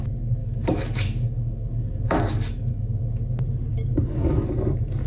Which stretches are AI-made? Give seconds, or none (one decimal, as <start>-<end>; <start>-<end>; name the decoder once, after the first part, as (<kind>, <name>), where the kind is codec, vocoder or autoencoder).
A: 0.4-3.0 (codec, DAC); 3.7-4.5